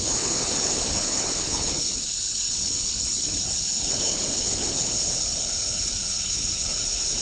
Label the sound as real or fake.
fake